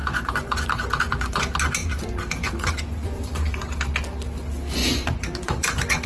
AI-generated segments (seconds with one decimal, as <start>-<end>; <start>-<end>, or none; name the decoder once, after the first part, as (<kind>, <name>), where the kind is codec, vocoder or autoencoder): 0.0-1.4 (vocoder, Vocos); 1.8-3.7; 4.8-6.1